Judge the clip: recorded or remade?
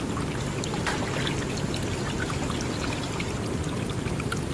recorded